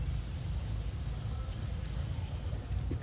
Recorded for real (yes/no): yes